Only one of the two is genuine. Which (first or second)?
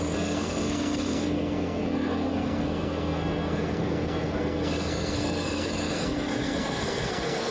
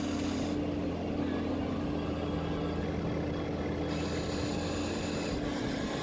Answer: second